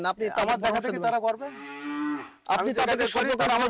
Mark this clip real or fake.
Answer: real